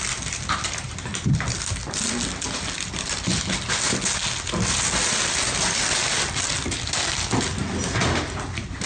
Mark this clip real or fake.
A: real